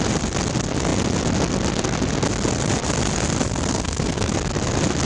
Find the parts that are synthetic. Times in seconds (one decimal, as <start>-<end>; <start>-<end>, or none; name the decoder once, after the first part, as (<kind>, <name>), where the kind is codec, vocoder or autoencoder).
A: 3.7-4.3 (codec, SNAC)